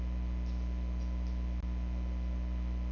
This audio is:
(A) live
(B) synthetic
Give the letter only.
A